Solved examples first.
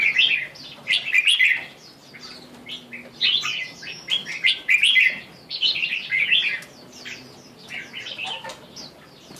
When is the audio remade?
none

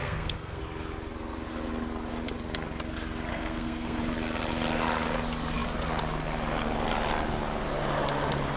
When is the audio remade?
0.0-0.6; 3.3-4.0

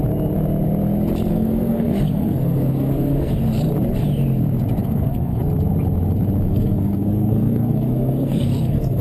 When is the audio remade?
1.3-3.3; 4.8-5.4; 6.5-9.0

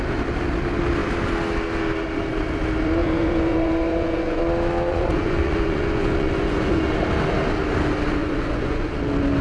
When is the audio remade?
3.0-4.4; 4.9-6.9; 8.2-9.0

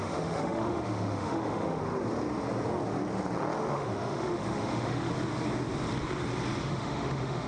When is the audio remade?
0.0-1.9; 3.7-5.1; 6.6-7.5

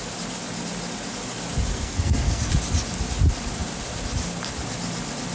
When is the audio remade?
1.7-2.5

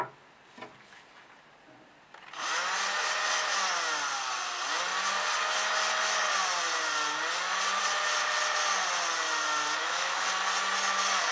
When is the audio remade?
9.8-10.3